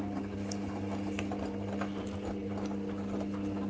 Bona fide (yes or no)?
yes